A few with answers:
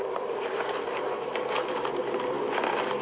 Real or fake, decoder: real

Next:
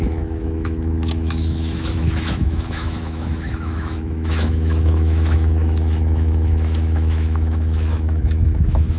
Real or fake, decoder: fake, autoencoder, DAC-VAE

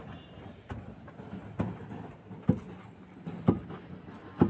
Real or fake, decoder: real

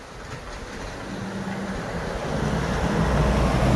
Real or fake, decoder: real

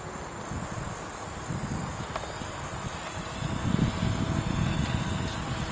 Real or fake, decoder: real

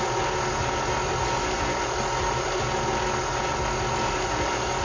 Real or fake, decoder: real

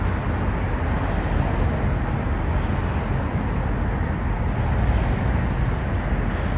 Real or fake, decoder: real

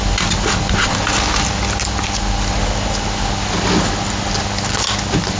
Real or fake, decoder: real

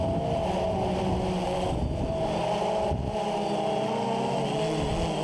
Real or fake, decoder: real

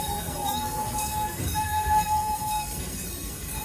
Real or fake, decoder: fake, codec, SNAC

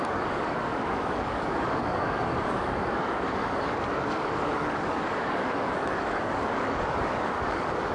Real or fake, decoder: fake, codec, DAC